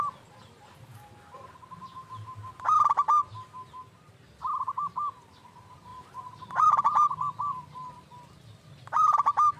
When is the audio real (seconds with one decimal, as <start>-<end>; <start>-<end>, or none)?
0.0-5.9; 6.7-9.6